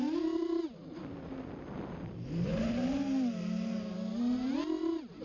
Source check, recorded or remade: recorded